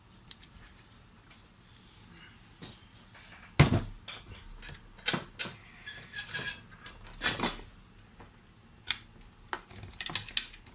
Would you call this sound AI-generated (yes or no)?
no